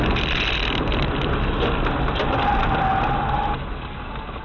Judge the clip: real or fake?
fake